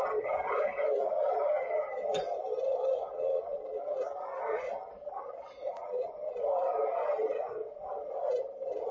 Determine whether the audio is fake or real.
real